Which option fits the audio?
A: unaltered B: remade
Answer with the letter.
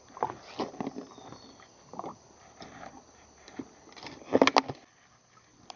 A